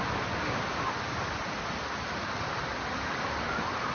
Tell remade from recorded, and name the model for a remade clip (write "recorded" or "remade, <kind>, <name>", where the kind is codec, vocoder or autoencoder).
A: recorded